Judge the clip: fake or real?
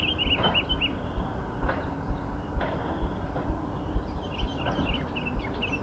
real